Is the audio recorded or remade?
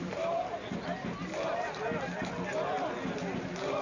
recorded